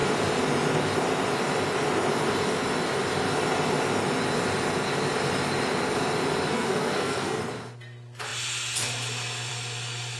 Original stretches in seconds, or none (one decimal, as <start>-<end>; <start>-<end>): 0.0-6.5; 7.4-10.2